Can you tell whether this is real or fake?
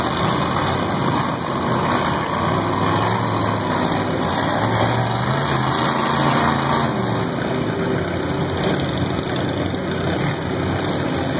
real